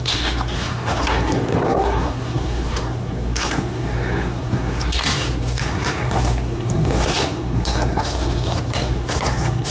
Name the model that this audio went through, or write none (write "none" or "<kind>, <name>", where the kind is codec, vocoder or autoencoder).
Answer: codec, SNAC